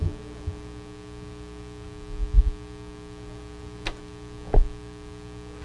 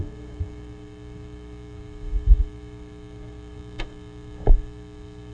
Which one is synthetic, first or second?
second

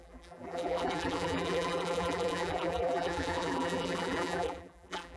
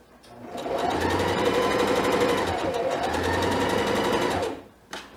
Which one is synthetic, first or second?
first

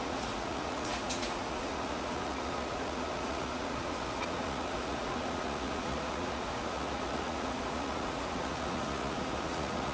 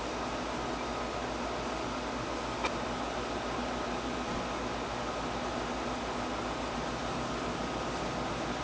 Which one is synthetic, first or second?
first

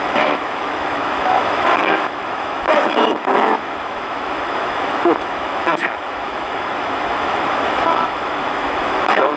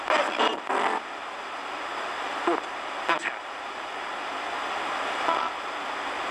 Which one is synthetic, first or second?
first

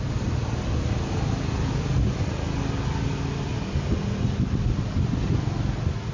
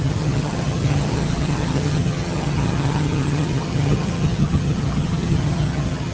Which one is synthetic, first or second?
second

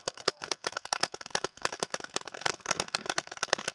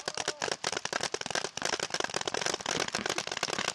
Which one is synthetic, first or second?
first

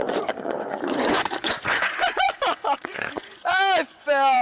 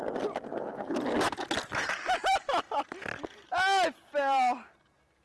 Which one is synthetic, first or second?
first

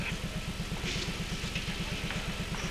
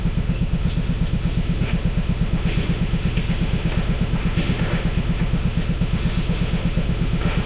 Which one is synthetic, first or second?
second